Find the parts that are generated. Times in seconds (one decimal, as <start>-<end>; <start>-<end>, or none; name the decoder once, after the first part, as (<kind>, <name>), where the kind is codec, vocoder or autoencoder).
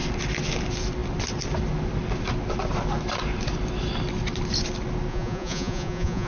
5.1-6.3 (vocoder, Vocos)